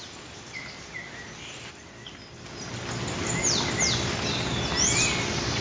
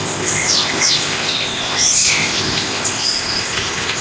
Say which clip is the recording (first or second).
first